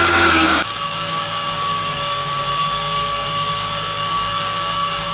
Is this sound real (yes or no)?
no